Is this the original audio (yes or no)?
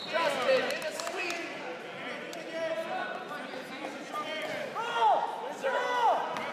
yes